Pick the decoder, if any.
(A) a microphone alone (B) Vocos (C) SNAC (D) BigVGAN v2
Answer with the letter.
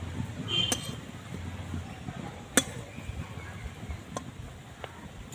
A